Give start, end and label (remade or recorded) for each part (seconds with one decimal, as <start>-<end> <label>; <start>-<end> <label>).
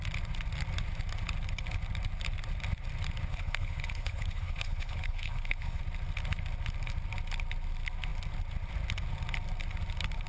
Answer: 0.0-3.3 recorded; 3.3-5.8 remade; 5.8-10.3 recorded